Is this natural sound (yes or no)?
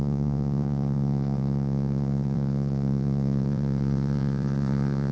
no